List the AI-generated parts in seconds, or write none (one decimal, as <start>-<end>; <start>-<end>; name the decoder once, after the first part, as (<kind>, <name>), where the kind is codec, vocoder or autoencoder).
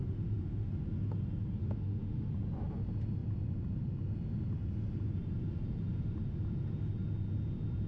0.0-0.7 (autoencoder, DAC-VAE); 1.6-2.3